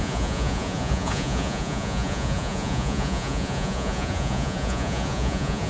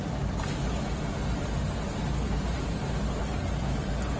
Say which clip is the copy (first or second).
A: first